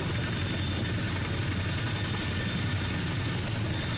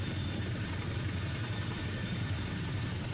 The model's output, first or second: second